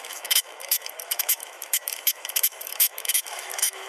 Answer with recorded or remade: remade